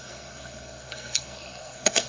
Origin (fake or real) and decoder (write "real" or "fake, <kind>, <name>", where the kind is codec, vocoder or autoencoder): fake, codec, SNAC